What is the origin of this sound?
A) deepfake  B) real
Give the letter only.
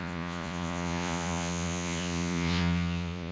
A